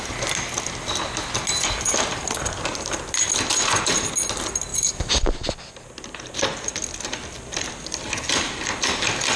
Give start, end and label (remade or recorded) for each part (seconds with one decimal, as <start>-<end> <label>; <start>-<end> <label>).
0.0-9.4 recorded